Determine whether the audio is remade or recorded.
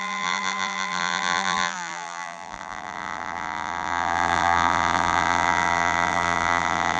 remade